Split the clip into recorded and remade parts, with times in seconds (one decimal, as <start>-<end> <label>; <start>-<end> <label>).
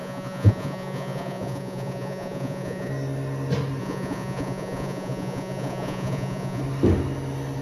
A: 0.0-2.9 remade; 2.9-3.8 recorded; 3.8-6.6 remade; 6.6-7.6 recorded